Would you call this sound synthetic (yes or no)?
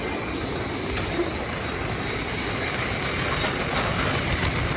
no